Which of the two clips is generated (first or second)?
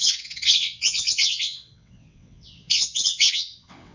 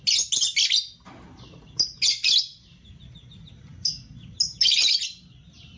first